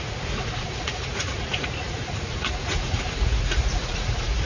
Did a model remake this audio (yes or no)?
yes